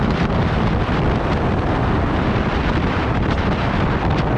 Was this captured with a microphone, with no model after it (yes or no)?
no